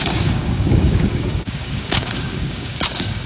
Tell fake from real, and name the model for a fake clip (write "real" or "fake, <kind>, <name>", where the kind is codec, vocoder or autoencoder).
fake, codec, DAC